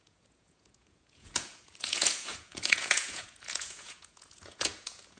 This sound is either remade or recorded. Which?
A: remade